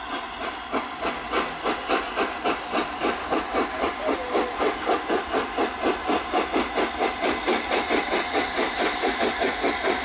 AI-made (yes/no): no